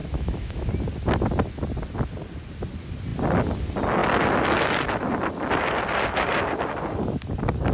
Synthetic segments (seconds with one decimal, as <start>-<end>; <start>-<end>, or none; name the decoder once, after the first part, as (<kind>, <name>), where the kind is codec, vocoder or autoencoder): 0.0-0.7 (autoencoder, DAC-VAE)